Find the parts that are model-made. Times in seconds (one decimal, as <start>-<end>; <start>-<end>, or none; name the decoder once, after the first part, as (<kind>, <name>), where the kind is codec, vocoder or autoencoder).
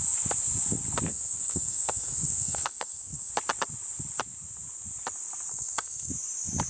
1.1-3.3 (codec, SNAC); 5.5-6.1